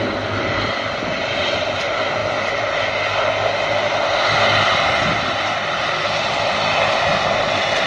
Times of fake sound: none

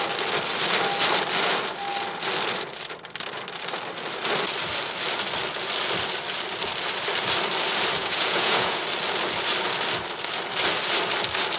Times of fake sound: 8.0-8.8 (vocoder, Vocos)

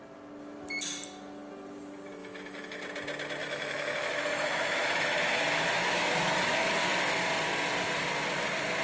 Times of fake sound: 2.2-2.8 (autoencoder, DAC-VAE); 3.4-6.7

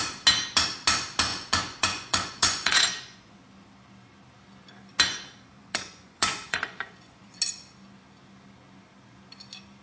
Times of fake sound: 1.3-3.4 (vocoder, Vocos); 5.6-7.4